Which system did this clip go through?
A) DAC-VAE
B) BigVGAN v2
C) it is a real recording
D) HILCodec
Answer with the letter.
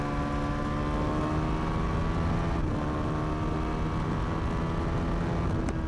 C